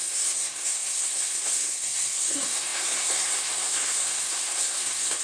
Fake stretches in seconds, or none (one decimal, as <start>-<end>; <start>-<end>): 0.0-5.2